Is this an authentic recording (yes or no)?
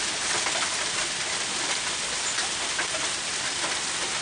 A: yes